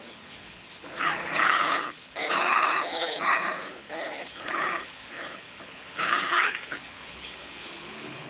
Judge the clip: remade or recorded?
remade